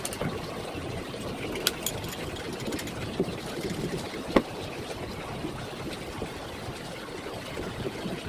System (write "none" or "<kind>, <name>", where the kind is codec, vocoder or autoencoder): none